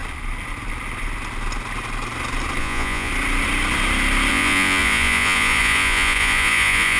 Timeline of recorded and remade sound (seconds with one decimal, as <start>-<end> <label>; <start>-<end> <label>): 0.0-2.6 recorded; 2.6-3.1 remade; 3.1-4.3 recorded; 4.3-7.0 remade